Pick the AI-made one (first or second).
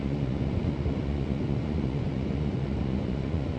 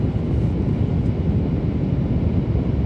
first